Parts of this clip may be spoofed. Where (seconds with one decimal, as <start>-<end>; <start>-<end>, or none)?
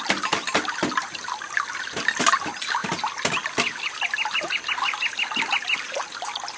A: none